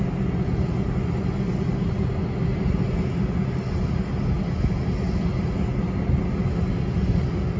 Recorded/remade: recorded